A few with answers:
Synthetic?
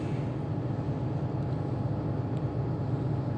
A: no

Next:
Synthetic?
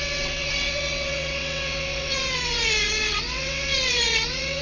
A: yes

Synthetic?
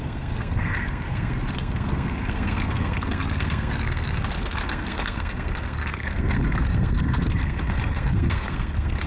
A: yes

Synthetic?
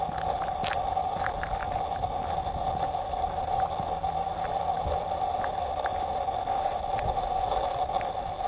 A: no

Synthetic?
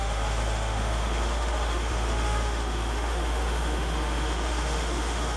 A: yes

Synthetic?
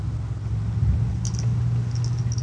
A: no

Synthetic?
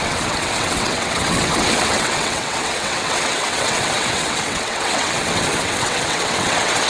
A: yes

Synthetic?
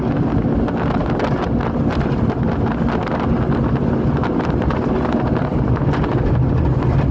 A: no